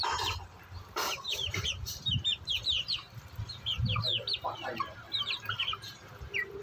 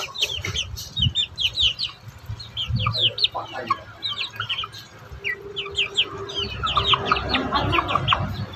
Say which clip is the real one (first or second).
second